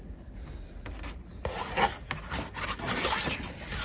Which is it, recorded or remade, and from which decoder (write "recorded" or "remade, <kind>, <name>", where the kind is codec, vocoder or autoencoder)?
recorded